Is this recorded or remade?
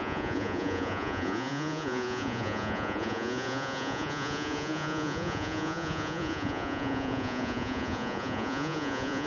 remade